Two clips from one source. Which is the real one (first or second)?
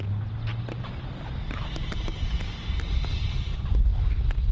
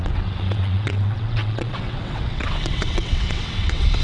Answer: first